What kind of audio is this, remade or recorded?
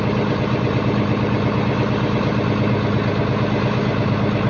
recorded